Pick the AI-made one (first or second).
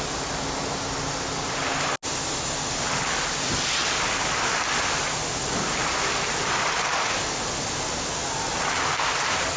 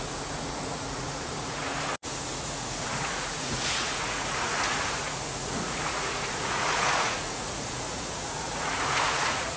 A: second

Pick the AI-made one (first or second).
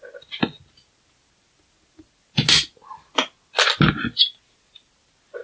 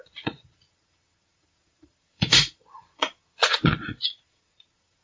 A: second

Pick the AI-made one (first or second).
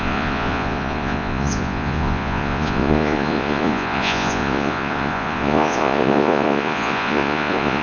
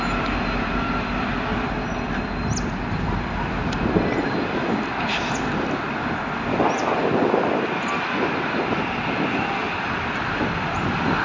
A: first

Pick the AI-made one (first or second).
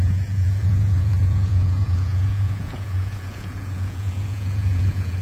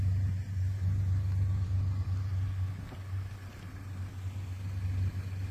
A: first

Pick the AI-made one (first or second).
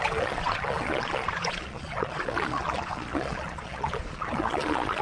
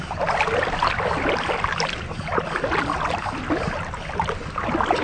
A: first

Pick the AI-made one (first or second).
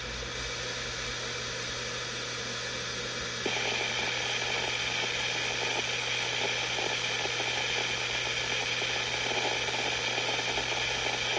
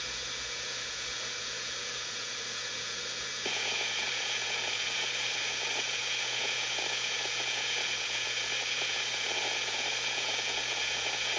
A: second